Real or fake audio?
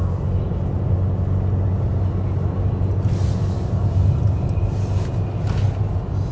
real